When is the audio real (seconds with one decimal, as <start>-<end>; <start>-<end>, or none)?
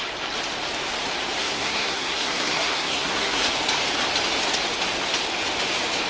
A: 0.0-1.4; 3.5-6.1